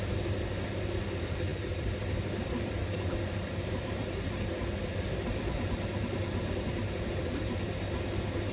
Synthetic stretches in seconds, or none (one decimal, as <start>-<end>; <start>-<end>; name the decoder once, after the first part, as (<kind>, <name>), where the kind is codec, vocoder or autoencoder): 1.5-6.6 (vocoder, BigVGAN v2)